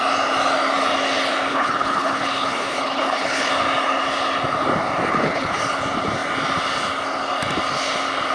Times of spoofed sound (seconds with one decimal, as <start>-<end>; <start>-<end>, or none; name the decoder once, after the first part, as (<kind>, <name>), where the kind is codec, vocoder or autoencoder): 1.5-3.5 (codec, HILCodec); 5.1-5.6